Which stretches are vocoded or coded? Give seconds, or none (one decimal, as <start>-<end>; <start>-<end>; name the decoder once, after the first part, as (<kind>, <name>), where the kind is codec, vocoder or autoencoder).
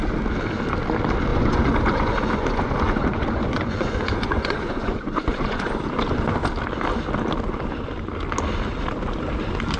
1.3-5.7 (vocoder, Vocos)